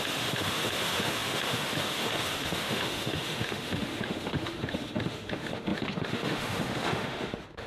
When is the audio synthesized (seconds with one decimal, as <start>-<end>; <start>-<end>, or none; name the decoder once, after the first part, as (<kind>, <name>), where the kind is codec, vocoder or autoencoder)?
0.0-7.7 (autoencoder, DAC-VAE)